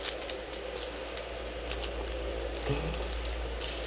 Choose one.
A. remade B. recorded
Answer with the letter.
B